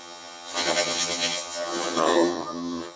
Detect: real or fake fake